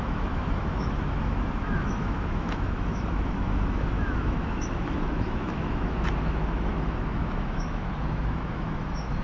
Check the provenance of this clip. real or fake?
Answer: fake